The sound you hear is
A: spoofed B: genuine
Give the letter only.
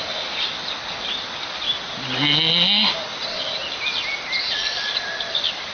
B